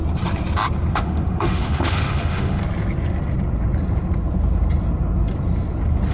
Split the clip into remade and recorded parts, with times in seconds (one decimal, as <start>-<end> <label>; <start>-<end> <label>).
0.0-0.9 recorded; 0.9-2.6 remade; 2.6-6.1 recorded

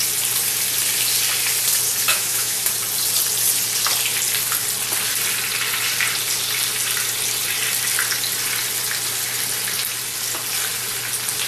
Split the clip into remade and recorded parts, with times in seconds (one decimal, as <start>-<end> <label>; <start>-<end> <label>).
0.0-2.1 recorded; 2.1-2.7 remade; 2.7-11.5 recorded

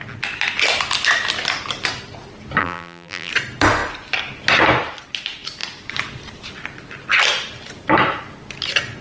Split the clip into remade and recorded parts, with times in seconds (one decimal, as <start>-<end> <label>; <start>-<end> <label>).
0.0-2.6 recorded; 2.6-3.3 remade; 3.3-9.0 recorded

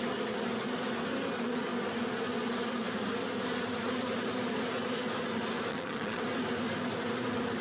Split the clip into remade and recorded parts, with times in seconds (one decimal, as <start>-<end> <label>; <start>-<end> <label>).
0.0-5.7 recorded; 5.7-6.2 remade; 6.2-7.6 recorded

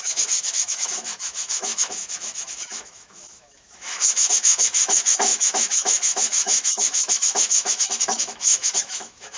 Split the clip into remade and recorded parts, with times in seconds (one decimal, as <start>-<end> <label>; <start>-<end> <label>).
0.0-9.4 remade

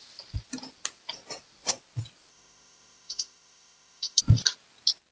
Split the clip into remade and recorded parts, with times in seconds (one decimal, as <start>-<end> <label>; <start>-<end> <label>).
0.0-2.3 recorded; 2.3-4.2 remade; 4.2-5.1 recorded

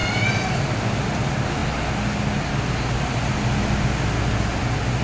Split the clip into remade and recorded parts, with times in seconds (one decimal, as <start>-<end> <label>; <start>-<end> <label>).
0.0-5.0 recorded